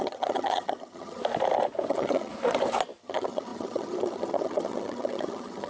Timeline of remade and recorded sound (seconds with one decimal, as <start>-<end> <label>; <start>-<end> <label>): 0.0-1.2 remade; 1.2-1.9 recorded; 1.9-2.3 remade; 2.3-3.0 recorded; 3.0-5.7 remade